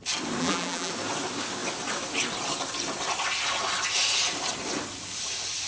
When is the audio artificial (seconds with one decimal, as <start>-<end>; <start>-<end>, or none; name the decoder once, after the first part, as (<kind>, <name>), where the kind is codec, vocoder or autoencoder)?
0.4-0.9 (vocoder, BigVGAN v2)